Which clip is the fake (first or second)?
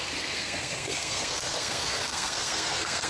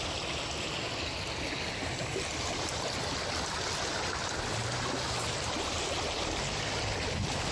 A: first